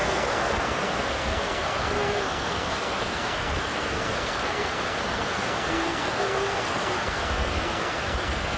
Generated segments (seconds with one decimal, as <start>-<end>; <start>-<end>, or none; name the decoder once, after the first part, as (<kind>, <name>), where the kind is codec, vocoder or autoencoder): 0.0-8.6 (codec, SNAC)